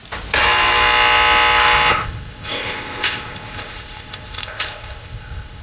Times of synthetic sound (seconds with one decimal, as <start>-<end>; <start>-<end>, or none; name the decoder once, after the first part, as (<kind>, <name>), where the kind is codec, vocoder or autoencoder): 1.9-5.6 (codec, ZipCodec)